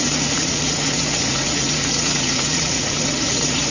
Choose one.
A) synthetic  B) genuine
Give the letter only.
A